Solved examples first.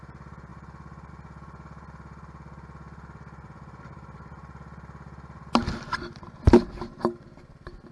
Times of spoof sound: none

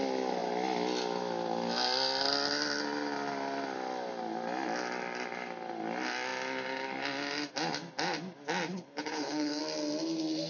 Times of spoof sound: 8.7-9.6 (codec, HILCodec)

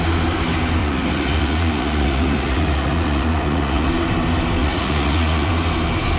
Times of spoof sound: 0.8-3.9 (vocoder, Vocos); 4.6-5.5

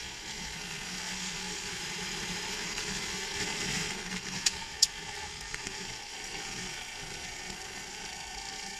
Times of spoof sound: 0.0-1.8 (codec, SNAC); 2.5-8.8

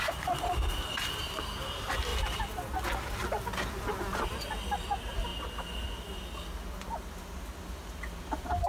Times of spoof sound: none

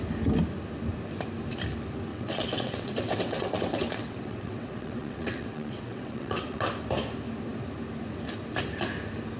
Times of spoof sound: 2.1-6.7 (vocoder, WaveNeXt)

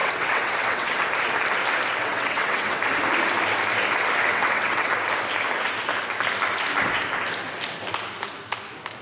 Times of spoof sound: 0.0-0.9 (vocoder, WaveNeXt); 2.0-2.8; 4.3-4.9

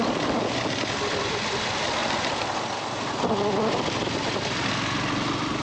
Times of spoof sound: none